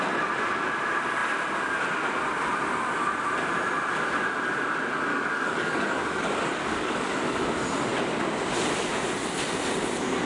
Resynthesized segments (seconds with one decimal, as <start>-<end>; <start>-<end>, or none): 5.1-7.5